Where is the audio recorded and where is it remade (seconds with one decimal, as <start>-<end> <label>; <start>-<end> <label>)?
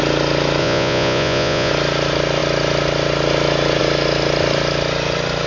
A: 0.0-0.6 recorded; 0.6-1.7 remade; 1.7-5.5 recorded